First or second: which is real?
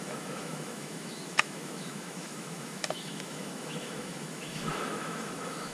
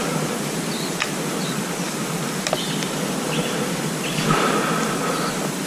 second